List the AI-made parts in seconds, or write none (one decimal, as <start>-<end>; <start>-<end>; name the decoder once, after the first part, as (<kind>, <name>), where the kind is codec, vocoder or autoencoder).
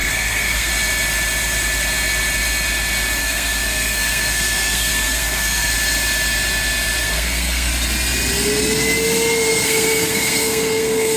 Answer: 0.0-0.7 (codec, SNAC); 3.2-5.7; 7.0-7.7; 9.5-11.2